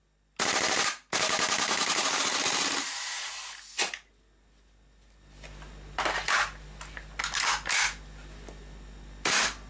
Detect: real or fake real